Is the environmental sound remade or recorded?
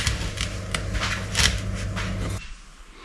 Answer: recorded